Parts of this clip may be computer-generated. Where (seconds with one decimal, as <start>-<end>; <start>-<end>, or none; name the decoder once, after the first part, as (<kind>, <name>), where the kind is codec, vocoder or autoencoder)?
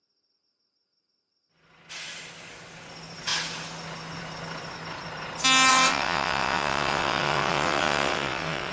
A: 5.7-8.7 (vocoder, WaveNeXt)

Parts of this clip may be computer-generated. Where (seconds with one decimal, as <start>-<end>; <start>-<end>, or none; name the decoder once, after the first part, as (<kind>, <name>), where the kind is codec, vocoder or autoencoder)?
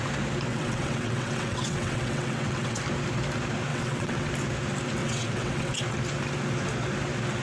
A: 0.5-2.8 (vocoder, WaveNeXt); 3.7-4.3; 5.0-5.8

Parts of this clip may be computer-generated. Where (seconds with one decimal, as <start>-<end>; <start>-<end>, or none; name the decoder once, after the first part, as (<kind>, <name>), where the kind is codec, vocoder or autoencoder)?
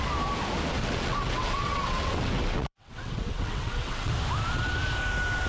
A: 0.8-4.1 (vocoder, WaveNeXt)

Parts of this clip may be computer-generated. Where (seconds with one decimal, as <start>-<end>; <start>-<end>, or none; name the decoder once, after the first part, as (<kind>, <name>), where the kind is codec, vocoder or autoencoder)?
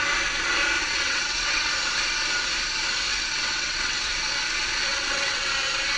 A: 0.8-1.7 (vocoder, WaveNeXt); 3.1-4.0; 4.9-5.5